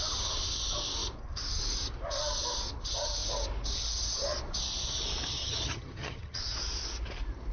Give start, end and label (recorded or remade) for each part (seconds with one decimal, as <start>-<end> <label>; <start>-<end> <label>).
0.0-5.3 recorded; 5.3-6.4 remade; 6.4-7.5 recorded